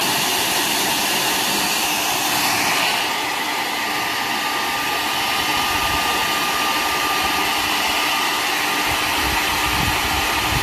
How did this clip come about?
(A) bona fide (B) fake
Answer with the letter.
A